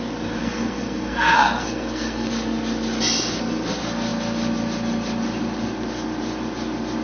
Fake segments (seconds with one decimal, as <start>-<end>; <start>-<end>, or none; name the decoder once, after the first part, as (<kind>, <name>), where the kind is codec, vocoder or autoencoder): 0.4-2.3 (codec, SNAC)